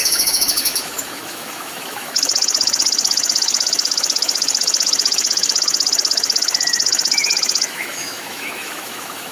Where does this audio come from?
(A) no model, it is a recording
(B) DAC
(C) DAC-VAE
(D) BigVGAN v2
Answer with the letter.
C